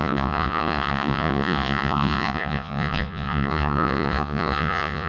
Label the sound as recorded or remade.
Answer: remade